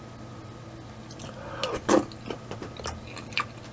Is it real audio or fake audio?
real